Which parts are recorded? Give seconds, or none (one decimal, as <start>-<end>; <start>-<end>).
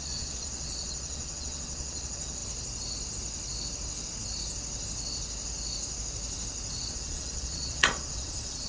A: 2.4-6.9